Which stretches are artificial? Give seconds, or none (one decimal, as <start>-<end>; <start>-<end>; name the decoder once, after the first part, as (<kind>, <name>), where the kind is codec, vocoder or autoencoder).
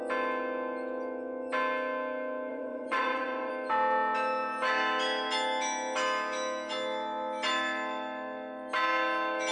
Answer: 2.5-3.5 (vocoder, Vocos)